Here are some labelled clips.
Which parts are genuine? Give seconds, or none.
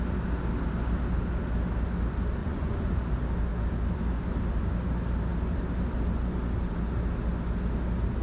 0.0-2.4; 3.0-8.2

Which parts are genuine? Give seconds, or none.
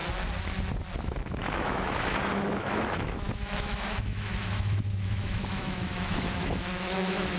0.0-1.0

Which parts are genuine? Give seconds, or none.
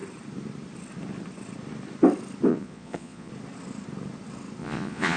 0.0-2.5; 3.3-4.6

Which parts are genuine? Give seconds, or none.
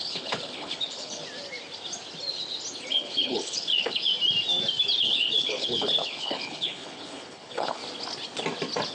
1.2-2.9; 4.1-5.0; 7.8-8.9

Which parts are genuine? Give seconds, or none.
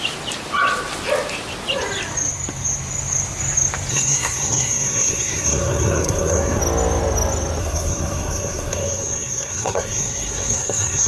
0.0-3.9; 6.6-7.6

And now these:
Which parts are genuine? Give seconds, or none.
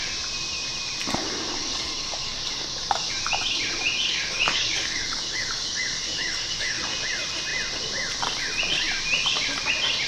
0.0-1.6; 3.1-4.1; 6.8-10.1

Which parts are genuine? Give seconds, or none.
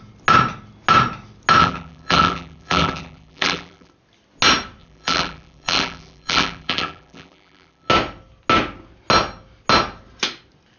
0.0-1.6; 3.9-4.8; 7.9-10.8